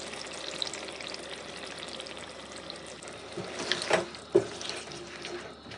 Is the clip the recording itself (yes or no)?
yes